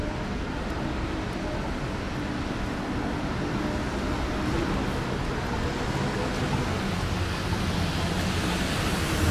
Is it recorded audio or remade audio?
recorded